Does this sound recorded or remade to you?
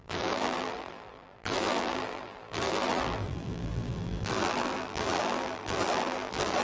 remade